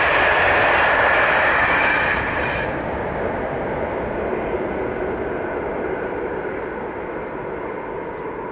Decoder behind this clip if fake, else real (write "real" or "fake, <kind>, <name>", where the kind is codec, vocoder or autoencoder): real